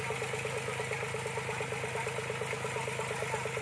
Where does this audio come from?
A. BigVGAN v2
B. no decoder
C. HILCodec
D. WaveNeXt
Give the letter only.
B